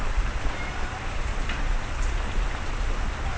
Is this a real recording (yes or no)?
yes